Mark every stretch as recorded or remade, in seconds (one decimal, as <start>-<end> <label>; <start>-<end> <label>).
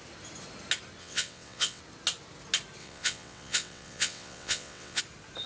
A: 0.0-1.0 recorded; 1.0-1.8 remade; 1.8-2.8 recorded; 2.8-5.0 remade; 5.0-5.5 recorded